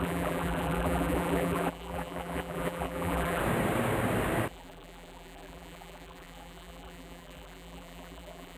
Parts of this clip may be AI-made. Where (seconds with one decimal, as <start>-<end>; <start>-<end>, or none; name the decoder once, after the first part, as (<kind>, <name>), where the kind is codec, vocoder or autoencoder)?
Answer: 0.0-3.4 (vocoder, BigVGAN v2); 4.5-8.6

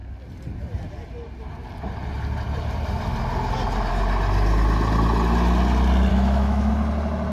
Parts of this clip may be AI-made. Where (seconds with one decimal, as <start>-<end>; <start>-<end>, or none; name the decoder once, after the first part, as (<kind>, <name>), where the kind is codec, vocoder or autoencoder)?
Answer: 6.1-6.7 (autoencoder, DAC-VAE)

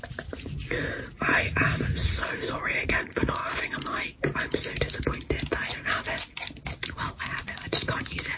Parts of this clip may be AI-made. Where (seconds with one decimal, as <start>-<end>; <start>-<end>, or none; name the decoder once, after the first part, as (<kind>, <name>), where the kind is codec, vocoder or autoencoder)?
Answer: 0.0-3.4 (vocoder, Vocos); 6.8-8.4

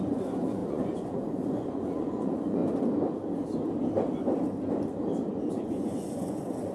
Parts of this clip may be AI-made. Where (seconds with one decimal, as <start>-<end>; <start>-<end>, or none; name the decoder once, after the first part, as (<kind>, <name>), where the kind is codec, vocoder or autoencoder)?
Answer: 0.0-2.6 (vocoder, Vocos); 5.5-6.7

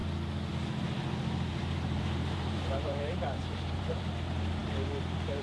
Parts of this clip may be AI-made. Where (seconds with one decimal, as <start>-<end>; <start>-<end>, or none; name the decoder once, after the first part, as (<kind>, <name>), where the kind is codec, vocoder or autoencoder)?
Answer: 1.5-4.0 (vocoder, BigVGAN v2)

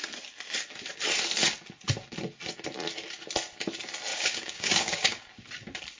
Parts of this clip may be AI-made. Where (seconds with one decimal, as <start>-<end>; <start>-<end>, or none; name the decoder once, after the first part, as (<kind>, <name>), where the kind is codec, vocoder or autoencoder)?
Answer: 4.1-5.2 (codec, DAC)